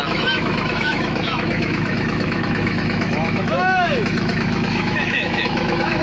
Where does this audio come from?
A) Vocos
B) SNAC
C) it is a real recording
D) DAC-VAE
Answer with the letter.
D